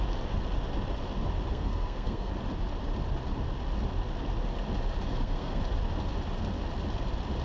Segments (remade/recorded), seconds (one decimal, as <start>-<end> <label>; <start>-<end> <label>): 0.0-1.5 recorded; 1.5-2.3 remade; 2.3-5.1 recorded; 5.1-5.6 remade; 5.6-7.4 recorded